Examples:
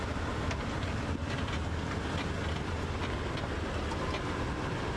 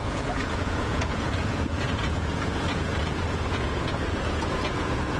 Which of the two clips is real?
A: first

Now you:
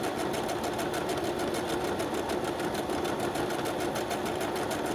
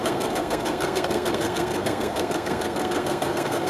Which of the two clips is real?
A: first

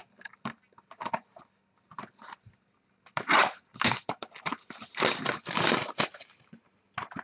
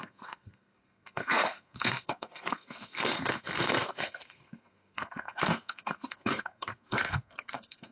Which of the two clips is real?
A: first